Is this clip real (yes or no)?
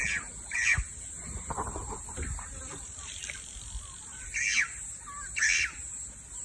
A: yes